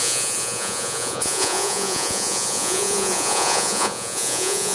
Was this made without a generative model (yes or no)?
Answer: no